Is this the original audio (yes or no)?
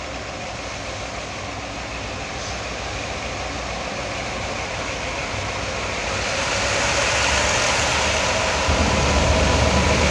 yes